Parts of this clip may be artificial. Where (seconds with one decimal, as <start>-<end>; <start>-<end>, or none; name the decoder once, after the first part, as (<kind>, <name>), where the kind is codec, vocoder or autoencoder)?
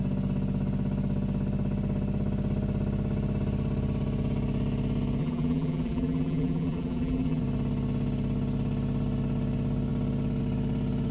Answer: 5.2-7.4 (vocoder, BigVGAN v2)